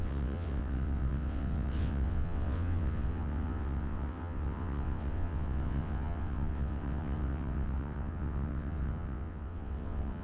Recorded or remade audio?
remade